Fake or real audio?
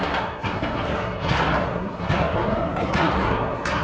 fake